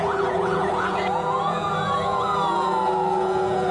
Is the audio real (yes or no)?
no